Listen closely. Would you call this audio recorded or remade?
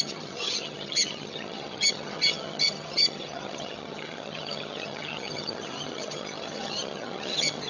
remade